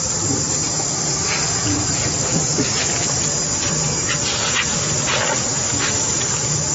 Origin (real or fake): real